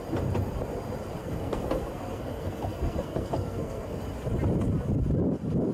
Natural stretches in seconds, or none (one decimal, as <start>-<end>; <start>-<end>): 0.0-1.2; 4.0-5.7